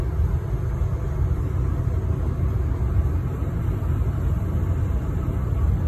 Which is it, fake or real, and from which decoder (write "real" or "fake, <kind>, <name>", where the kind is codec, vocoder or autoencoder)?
real